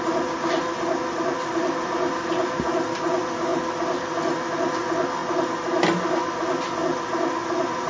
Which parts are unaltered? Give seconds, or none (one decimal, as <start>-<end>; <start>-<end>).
0.0-7.9